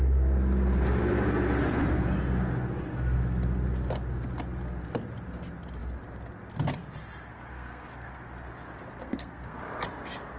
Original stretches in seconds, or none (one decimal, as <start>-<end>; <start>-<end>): 0.0-7.3; 8.2-9.0; 9.6-10.4